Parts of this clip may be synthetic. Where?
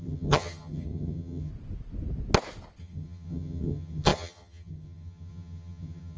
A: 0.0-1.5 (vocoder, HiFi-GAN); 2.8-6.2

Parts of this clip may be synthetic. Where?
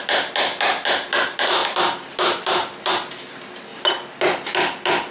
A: none